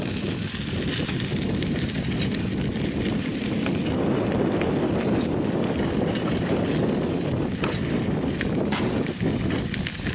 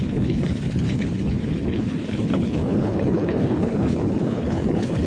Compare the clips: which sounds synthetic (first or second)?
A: second